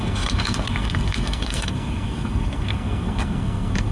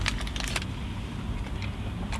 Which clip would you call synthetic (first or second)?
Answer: first